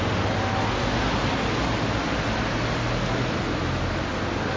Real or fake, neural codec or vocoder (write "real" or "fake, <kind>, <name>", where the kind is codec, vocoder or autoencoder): real